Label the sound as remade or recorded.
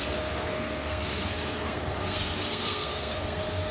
remade